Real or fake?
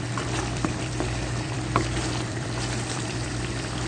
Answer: fake